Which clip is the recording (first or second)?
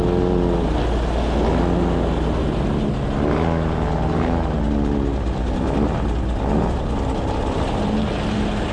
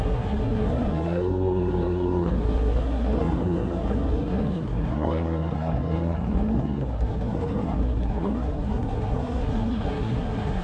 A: first